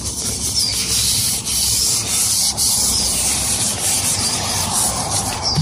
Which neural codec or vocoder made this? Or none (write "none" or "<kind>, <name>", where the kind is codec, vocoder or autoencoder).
vocoder, BigVGAN v2